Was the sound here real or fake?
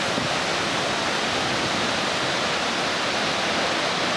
real